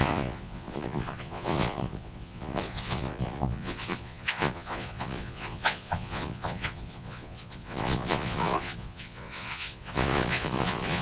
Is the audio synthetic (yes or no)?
yes